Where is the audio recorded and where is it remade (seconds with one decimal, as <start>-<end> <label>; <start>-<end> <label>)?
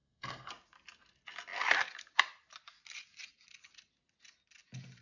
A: 0.0-0.5 remade; 0.5-5.0 recorded